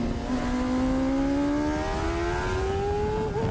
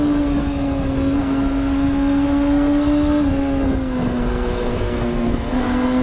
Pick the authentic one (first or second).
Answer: first